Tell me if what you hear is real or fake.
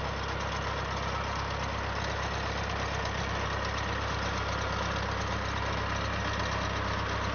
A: real